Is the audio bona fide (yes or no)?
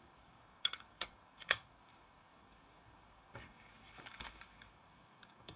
no